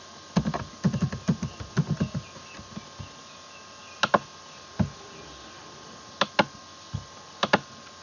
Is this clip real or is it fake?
real